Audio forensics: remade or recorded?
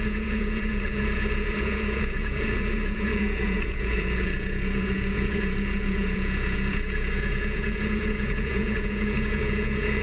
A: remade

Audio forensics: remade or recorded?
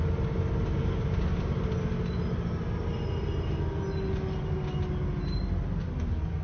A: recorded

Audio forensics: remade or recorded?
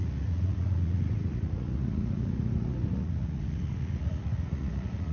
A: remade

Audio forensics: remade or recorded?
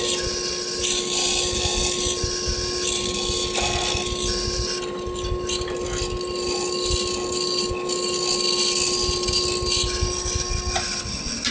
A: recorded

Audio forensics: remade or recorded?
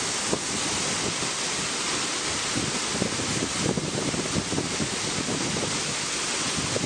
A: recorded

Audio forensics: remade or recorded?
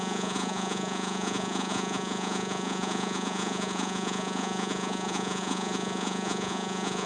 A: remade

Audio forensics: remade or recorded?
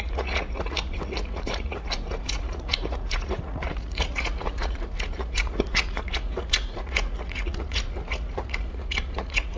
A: remade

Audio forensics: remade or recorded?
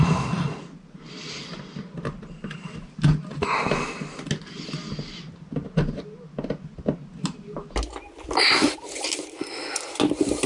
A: recorded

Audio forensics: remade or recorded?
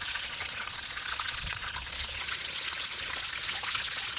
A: remade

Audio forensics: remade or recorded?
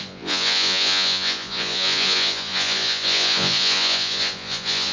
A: remade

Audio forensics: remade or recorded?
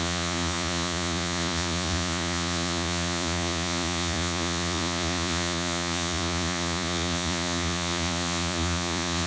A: remade